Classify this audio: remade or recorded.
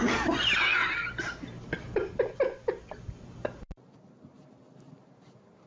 recorded